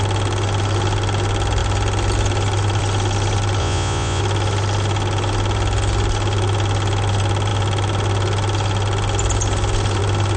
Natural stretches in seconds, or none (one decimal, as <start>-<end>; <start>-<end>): 0.0-3.6; 4.2-10.4

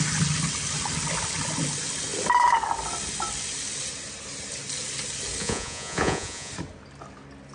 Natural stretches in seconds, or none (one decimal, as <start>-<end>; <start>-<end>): 0.0-5.4; 6.5-7.5

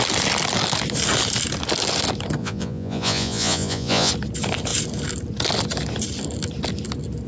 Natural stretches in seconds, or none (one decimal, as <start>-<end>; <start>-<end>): 0.0-2.4; 4.1-7.3

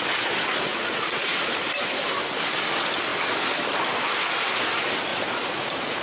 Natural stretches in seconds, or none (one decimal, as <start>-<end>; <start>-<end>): 0.0-0.7; 2.1-5.1

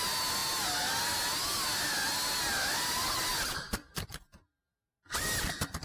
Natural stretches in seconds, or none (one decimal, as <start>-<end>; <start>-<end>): 0.0-5.8

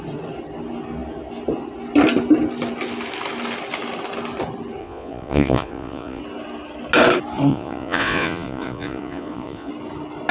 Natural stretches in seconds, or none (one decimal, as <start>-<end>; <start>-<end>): 0.0-4.8; 6.2-7.5; 9.7-10.3

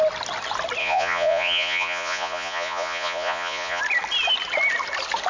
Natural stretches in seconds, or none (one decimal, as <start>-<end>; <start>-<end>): 0.0-0.8; 3.8-5.3

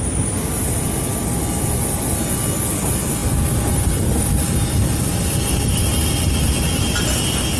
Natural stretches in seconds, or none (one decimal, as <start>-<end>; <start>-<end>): 0.0-7.6